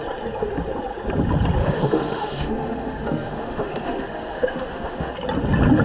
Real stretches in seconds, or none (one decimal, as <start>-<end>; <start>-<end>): 0.0-1.6; 5.1-5.8